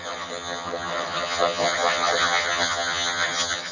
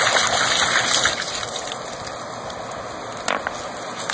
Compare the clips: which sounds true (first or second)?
second